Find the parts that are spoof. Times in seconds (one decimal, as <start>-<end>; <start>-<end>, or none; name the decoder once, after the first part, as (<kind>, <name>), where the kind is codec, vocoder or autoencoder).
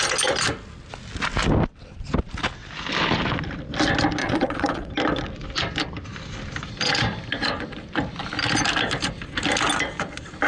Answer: 4.2-4.9 (vocoder, WaveNeXt)